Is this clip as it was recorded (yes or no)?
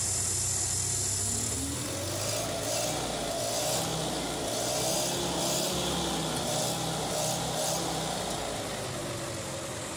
yes